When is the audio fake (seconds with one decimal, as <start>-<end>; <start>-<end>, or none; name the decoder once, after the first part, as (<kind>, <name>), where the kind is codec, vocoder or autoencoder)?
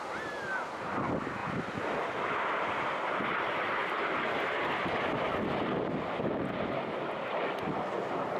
none